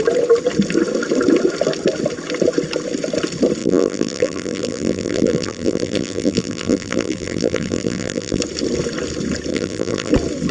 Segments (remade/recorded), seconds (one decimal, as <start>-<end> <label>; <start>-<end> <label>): 0.0-3.6 recorded; 3.6-8.4 remade; 8.4-9.5 recorded; 9.5-10.1 remade; 10.1-10.5 recorded